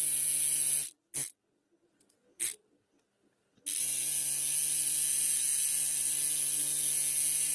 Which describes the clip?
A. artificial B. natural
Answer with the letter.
B